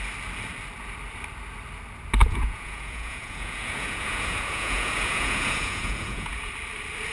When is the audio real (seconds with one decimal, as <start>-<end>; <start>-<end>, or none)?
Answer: 0.0-2.2; 6.5-7.1